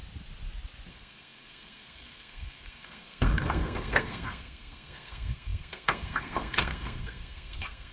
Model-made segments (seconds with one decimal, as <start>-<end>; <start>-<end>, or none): 0.9-7.9